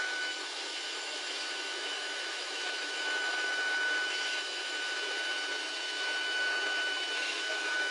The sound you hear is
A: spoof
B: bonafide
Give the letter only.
A